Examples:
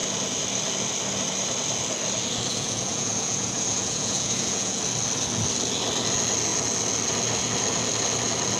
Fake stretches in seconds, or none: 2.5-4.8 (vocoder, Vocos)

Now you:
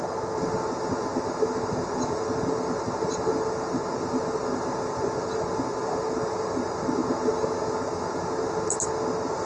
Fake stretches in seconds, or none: none

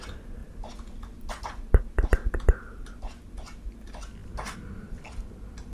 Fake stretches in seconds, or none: none

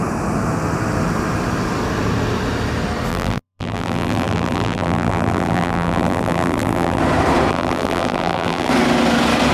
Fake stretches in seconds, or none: 3.1-7.0 (vocoder, BigVGAN v2); 7.5-8.7

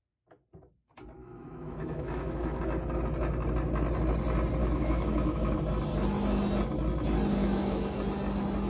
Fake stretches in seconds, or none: 1.2-2.6 (autoencoder, DAC-VAE); 4.6-5.6; 7.4-8.0

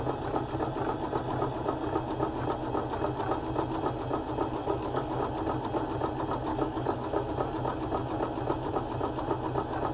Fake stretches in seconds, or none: 4.6-5.2 (codec, DAC); 6.5-7.3